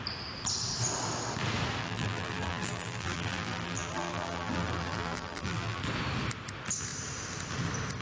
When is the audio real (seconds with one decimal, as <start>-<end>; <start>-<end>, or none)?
0.0-1.8; 5.8-8.0